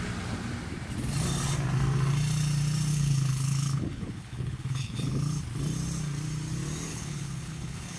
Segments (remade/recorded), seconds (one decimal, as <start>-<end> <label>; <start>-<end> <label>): 0.0-2.9 recorded; 2.9-5.1 remade; 5.1-6.9 recorded; 6.9-8.0 remade